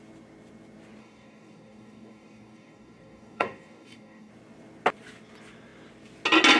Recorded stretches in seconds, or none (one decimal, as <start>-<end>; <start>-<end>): 0.0-1.0; 4.3-6.6